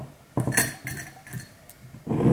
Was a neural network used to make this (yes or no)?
no